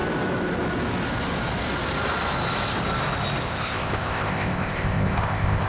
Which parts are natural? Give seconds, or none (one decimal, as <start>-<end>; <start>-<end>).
0.0-3.4